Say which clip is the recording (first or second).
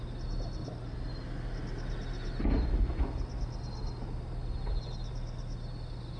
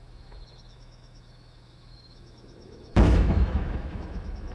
first